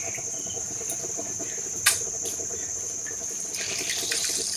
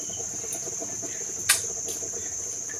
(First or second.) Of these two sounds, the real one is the second